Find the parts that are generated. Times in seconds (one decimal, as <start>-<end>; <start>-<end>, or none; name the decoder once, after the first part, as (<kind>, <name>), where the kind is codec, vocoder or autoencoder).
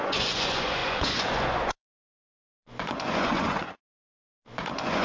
0.0-5.0 (vocoder, Vocos)